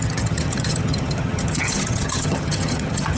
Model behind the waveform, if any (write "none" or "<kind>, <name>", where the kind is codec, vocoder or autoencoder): vocoder, HiFi-GAN